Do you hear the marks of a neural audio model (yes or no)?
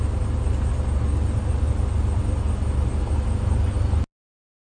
no